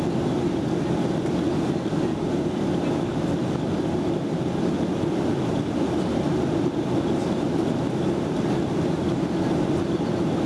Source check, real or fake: real